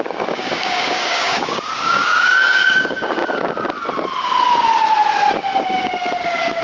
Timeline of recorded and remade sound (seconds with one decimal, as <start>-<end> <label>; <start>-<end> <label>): 0.0-3.2 remade; 3.2-5.3 recorded; 5.3-6.6 remade